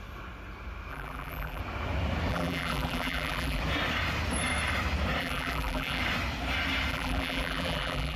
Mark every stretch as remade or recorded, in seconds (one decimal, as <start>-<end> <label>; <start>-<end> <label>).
0.0-0.9 recorded; 0.9-1.6 remade; 1.6-2.3 recorded; 2.3-3.6 remade; 3.6-5.2 recorded; 5.2-6.0 remade; 6.0-6.9 recorded; 6.9-8.2 remade